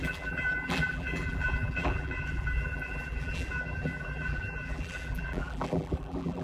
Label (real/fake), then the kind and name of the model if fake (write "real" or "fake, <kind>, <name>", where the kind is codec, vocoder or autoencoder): fake, vocoder, BigVGAN v2